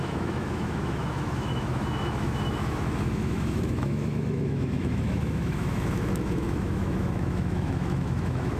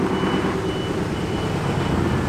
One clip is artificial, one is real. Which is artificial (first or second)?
first